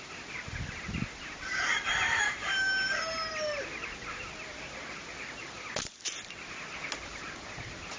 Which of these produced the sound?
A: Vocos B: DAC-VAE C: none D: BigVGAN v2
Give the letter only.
C